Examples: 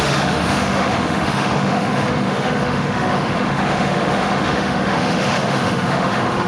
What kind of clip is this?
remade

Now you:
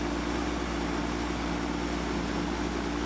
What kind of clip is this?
recorded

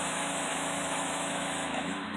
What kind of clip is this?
remade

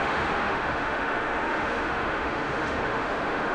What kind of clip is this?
remade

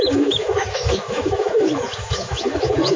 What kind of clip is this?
remade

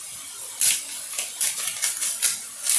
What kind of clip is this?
recorded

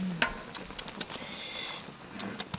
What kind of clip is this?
recorded